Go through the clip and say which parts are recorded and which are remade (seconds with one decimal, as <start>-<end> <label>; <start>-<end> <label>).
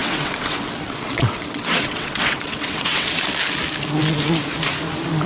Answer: 0.0-3.2 remade; 3.2-5.3 recorded